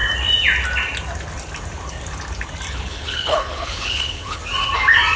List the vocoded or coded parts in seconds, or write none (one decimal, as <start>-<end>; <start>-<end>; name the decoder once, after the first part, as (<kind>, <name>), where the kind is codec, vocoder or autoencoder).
2.7-4.4 (codec, HILCodec)